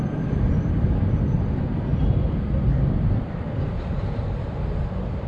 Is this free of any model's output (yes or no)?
no